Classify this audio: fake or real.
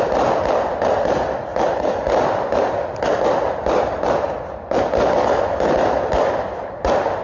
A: real